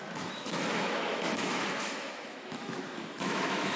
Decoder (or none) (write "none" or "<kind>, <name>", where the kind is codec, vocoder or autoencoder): autoencoder, DAC-VAE